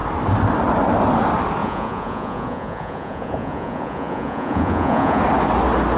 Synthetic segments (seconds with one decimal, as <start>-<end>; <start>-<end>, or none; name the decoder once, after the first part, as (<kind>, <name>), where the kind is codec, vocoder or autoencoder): 1.6-5.2 (vocoder, Vocos)